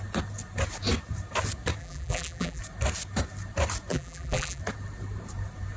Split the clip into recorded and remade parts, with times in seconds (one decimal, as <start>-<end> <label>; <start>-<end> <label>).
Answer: 0.0-1.8 recorded; 1.8-2.6 remade; 2.6-3.9 recorded; 3.9-4.6 remade; 4.6-5.8 recorded